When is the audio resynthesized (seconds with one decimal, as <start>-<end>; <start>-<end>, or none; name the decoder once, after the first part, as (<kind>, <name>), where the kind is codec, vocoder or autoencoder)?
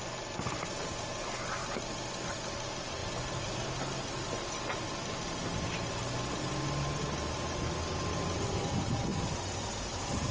none